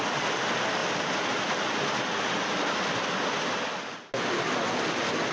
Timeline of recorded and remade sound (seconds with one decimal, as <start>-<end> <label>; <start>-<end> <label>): 0.0-5.3 recorded